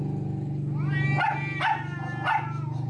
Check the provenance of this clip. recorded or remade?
recorded